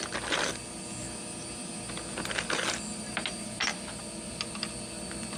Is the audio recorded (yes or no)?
yes